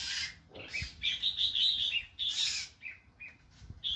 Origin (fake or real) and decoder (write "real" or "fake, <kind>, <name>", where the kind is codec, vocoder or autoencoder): real